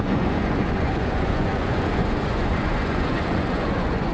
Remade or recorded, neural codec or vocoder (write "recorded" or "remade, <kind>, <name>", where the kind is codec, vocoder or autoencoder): remade, vocoder, Vocos